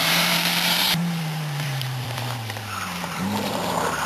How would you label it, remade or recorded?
remade